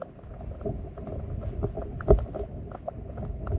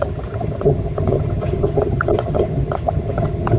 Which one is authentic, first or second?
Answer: first